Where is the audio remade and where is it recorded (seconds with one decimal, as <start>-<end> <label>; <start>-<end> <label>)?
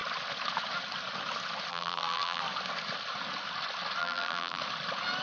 0.0-1.7 recorded; 1.7-2.4 remade; 2.4-4.0 recorded; 4.0-4.6 remade; 4.6-5.2 recorded